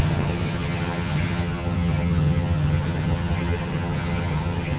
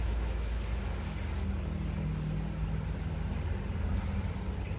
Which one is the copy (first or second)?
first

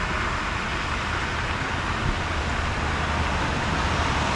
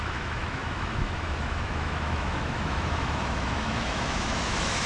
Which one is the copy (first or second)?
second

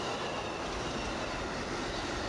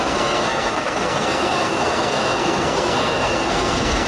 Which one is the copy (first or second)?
second